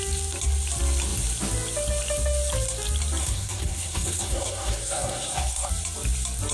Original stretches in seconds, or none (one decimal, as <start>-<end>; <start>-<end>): 0.0-3.2; 5.7-6.5